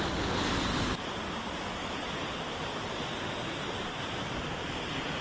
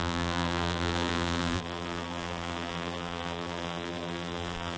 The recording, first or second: first